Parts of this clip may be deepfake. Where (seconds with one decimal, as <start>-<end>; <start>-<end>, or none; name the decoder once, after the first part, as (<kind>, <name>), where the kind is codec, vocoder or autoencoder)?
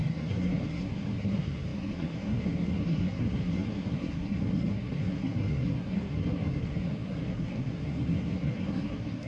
0.0-9.3 (codec, SNAC)